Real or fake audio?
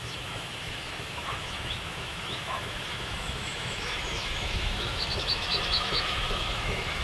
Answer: fake